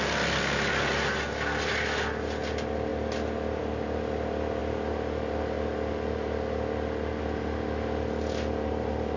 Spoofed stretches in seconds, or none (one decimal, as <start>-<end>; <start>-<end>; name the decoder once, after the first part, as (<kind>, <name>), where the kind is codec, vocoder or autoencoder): none